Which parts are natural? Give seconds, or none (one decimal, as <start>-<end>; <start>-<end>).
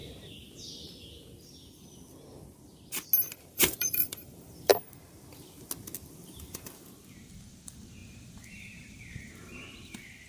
0.0-3.3; 4.7-6.1